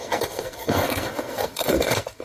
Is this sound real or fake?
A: fake